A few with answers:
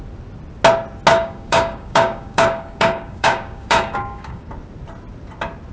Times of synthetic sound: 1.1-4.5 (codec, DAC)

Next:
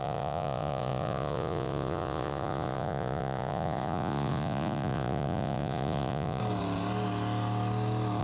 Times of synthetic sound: 0.0-6.4 (vocoder, Vocos)

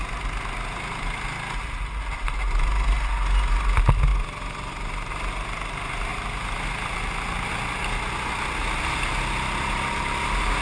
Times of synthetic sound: 4.1-5.1 (vocoder, BigVGAN v2)

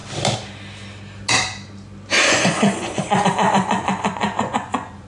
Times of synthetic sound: 2.2-5.1 (vocoder, Vocos)

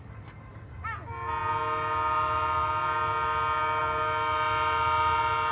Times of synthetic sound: none

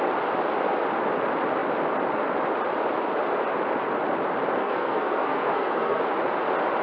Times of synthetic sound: 4.6-6.0 (codec, SNAC)

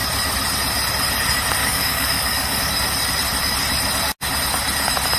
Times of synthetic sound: 1.6-2.7 (codec, DAC)